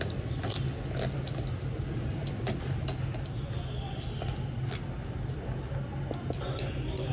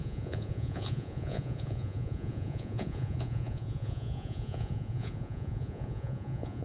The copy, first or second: second